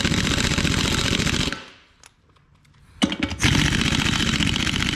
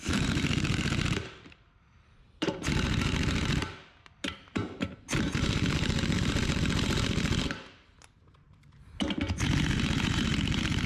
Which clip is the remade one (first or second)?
second